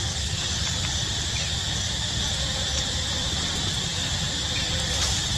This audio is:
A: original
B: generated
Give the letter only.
B